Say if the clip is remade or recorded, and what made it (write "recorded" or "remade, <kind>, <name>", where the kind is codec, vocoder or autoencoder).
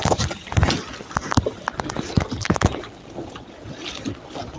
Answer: recorded